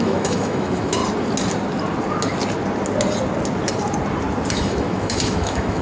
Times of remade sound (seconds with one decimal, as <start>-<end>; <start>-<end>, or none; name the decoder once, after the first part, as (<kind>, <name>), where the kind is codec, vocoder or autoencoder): 0.0-1.0 (autoencoder, DAC-VAE); 4.5-5.8